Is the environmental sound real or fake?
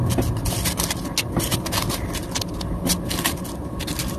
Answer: real